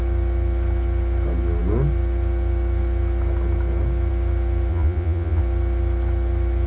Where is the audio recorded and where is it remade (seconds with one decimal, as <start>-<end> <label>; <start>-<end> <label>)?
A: 0.0-4.7 recorded; 4.7-5.4 remade; 5.4-6.7 recorded